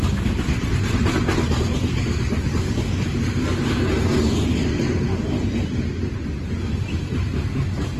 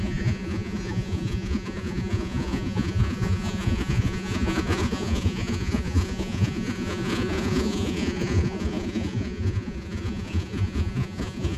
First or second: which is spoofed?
second